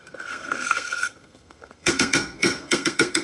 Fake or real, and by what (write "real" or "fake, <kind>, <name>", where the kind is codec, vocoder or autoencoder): fake, codec, SNAC